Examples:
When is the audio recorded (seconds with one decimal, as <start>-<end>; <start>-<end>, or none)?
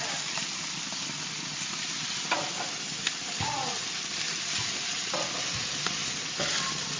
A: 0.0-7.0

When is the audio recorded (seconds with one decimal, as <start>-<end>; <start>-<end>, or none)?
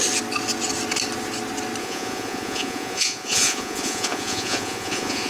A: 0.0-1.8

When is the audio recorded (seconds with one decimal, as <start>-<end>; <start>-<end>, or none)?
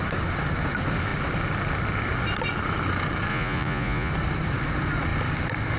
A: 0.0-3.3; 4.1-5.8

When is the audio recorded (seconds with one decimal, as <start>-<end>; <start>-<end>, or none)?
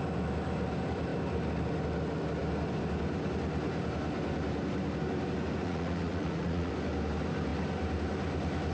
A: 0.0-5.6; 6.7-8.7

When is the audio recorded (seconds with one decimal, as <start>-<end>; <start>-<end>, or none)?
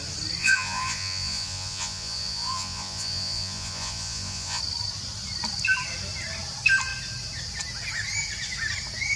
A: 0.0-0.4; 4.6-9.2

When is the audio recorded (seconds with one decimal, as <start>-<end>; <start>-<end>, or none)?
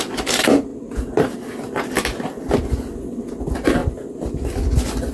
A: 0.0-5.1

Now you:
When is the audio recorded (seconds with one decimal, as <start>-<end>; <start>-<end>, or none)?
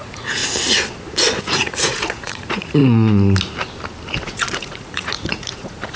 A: 0.4-1.4; 2.8-4.2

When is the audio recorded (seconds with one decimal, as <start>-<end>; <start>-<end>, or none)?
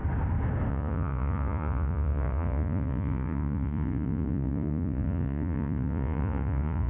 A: 0.0-0.7